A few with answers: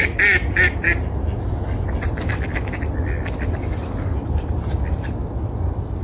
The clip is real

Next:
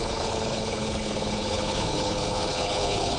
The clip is fake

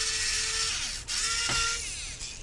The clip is real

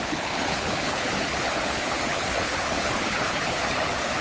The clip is fake